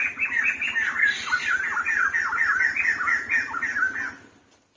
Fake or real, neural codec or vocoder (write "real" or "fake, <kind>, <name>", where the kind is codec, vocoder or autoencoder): real